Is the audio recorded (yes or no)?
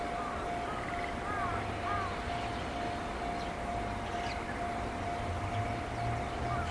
yes